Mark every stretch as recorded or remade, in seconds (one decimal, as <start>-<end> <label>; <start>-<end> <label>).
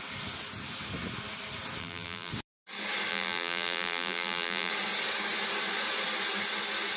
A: 0.0-1.8 recorded; 1.8-2.3 remade; 2.3-3.1 recorded; 3.1-4.7 remade; 4.7-7.0 recorded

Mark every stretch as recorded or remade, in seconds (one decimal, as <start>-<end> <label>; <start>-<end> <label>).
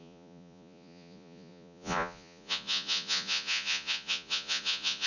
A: 0.0-5.1 remade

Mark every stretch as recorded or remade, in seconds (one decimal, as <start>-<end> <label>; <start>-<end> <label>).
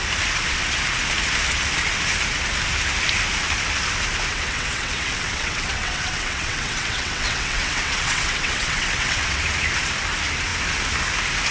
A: 0.0-4.3 recorded; 4.3-9.4 remade; 9.4-11.5 recorded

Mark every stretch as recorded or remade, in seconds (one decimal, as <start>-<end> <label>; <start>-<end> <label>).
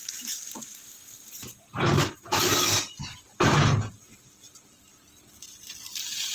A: 0.0-4.9 remade; 4.9-6.3 recorded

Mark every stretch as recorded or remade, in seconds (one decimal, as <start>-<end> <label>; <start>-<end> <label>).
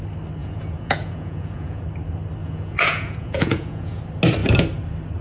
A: 0.0-0.4 recorded; 0.4-1.8 remade; 1.8-2.4 recorded; 2.4-4.0 remade; 4.0-5.2 recorded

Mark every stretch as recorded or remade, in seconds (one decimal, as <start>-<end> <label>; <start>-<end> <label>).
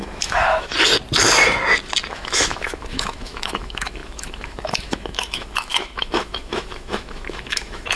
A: 0.0-0.7 remade; 0.7-2.1 recorded; 2.1-8.0 remade